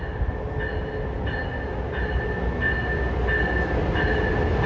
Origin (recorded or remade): recorded